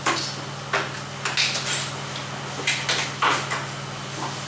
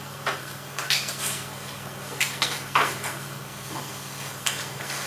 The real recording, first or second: first